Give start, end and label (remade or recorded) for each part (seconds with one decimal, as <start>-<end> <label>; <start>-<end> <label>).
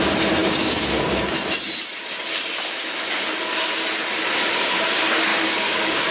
0.0-0.4 recorded; 0.4-1.3 remade; 1.3-5.3 recorded; 5.3-6.1 remade